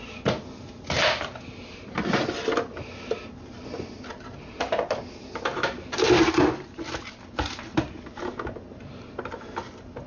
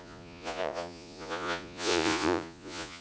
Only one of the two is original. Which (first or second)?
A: first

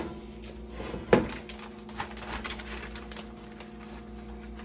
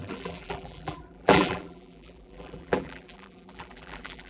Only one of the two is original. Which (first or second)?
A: first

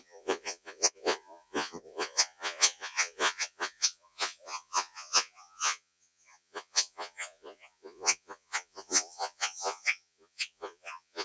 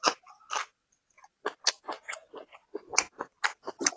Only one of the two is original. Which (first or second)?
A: second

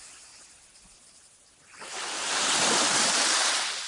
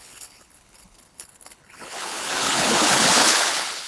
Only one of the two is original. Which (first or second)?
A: first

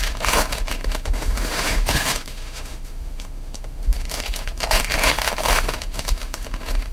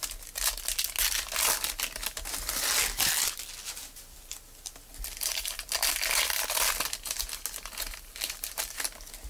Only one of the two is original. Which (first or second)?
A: second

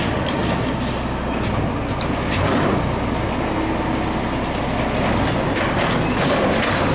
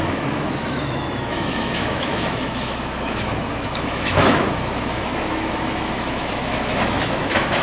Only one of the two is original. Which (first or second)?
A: first